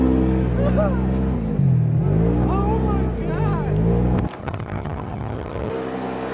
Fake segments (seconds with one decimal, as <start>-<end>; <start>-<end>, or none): 4.4-5.7